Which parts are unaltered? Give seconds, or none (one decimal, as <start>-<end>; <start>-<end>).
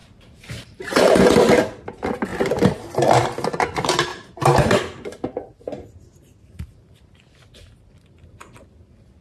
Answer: 1.2-4.1; 4.8-9.2